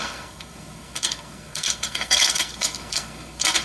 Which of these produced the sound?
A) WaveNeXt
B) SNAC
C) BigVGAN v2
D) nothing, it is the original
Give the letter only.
B